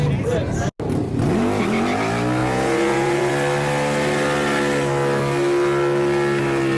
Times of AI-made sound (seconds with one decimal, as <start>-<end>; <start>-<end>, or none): 2.4-3.3